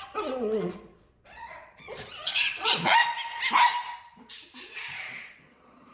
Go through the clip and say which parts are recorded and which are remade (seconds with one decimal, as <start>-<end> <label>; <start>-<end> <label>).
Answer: 0.0-3.0 remade; 3.0-4.0 recorded; 4.0-5.9 remade